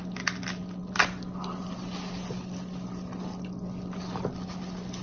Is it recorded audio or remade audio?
recorded